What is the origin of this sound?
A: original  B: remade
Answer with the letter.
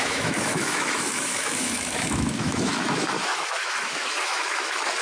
B